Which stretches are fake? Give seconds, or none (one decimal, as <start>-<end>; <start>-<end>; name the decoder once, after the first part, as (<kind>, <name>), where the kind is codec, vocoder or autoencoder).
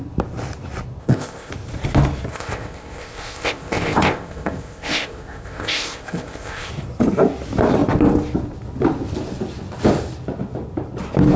1.0-1.5 (codec, ZipCodec); 2.3-6.7